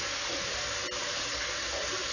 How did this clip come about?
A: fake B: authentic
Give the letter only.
B